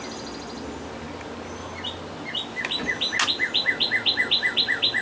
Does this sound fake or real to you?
real